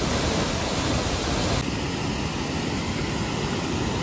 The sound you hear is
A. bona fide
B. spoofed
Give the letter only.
A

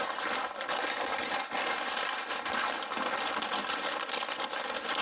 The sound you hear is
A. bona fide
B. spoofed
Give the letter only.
B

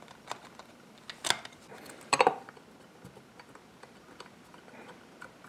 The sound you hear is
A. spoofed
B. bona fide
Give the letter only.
B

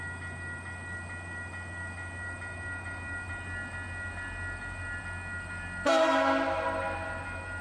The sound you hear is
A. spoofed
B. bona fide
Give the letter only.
B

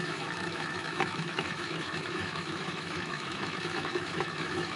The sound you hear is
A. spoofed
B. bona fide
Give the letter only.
A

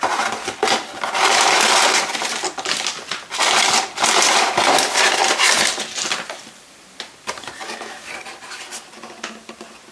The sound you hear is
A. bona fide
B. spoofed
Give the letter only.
A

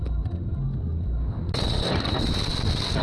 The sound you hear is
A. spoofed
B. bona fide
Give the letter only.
B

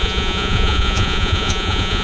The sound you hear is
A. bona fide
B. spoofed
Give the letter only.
B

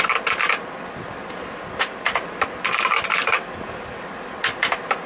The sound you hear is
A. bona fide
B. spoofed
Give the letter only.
A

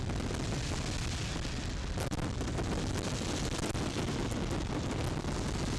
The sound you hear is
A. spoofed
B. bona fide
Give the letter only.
B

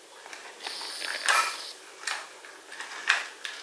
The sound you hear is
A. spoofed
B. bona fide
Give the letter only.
B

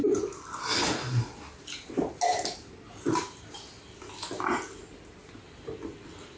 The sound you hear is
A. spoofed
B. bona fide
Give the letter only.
B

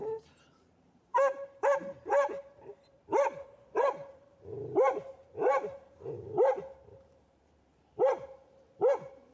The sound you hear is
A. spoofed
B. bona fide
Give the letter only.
A